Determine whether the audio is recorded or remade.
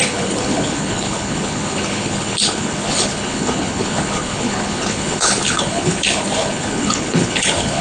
remade